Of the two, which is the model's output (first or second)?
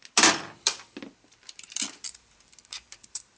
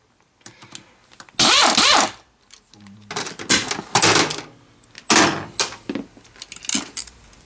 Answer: first